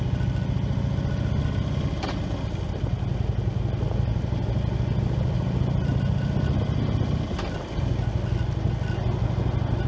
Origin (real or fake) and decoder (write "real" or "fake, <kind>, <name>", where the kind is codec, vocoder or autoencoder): real